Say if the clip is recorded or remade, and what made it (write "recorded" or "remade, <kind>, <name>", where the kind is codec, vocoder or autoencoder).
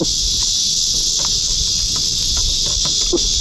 recorded